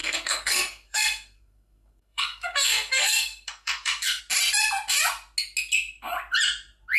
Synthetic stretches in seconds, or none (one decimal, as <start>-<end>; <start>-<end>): 0.0-4.2